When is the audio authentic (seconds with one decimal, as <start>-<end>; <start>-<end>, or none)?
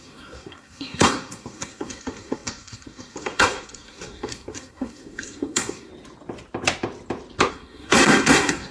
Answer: 5.9-7.5